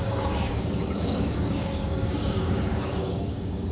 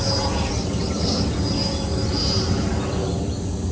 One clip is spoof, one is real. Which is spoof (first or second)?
first